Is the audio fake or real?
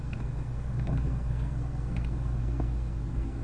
fake